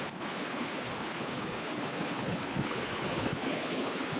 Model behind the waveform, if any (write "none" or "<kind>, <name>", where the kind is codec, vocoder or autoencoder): codec, HILCodec